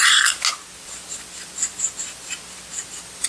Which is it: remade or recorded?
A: recorded